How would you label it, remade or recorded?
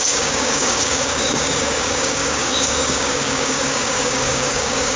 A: remade